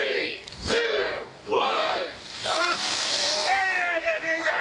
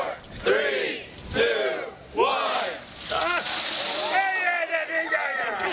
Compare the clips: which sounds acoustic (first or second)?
second